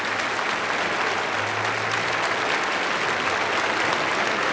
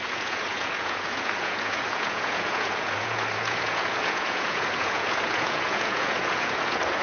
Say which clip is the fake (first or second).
second